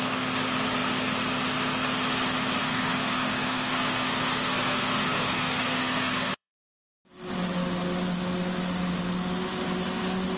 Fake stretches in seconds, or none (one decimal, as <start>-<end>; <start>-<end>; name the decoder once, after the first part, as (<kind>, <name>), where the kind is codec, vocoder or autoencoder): 2.6-6.9 (codec, SNAC)